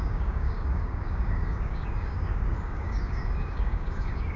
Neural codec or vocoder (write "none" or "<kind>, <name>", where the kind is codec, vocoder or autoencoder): codec, DAC